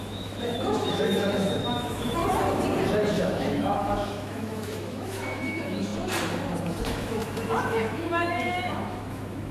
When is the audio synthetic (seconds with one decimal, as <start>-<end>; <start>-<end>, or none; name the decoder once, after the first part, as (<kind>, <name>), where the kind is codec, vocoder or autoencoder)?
0.0-2.2 (autoencoder, DAC-VAE); 3.1-5.9; 6.6-9.5

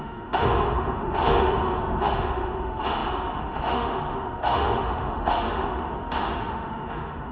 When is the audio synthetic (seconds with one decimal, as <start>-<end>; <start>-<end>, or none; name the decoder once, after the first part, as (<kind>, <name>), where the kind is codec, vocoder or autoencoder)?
0.0-7.3 (autoencoder, DAC-VAE)

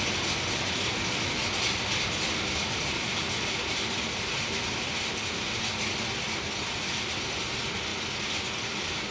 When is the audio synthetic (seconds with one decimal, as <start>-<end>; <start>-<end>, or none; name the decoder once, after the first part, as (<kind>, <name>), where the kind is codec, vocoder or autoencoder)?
none

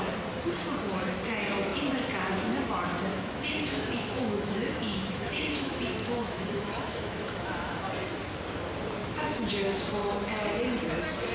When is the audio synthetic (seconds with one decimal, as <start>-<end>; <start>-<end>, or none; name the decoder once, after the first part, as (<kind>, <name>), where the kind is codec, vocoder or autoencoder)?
3.1-7.9 (autoencoder, DAC-VAE); 9.0-9.8

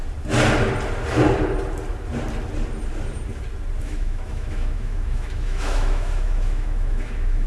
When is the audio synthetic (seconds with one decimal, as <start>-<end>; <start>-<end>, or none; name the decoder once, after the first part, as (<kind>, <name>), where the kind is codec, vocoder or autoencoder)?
3.8-7.5 (autoencoder, DAC-VAE)

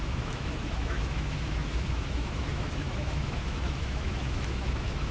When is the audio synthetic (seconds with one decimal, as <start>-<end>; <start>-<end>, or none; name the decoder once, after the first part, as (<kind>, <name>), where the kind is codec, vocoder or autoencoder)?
0.0-5.1 (autoencoder, DAC-VAE)